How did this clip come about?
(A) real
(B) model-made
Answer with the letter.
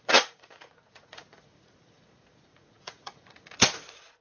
B